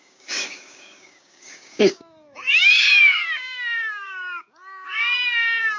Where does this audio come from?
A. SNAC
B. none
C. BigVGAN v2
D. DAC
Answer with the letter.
D